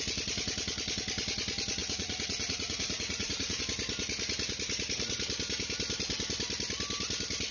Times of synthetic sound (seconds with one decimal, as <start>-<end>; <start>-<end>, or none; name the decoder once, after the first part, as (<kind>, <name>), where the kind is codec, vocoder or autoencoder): 1.8-3.6 (vocoder, Vocos)